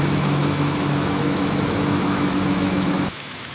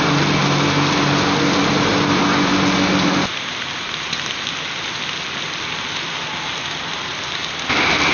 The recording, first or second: second